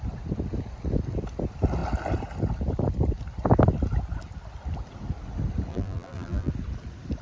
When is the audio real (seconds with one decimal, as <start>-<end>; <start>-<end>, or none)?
0.0-5.7; 6.5-7.2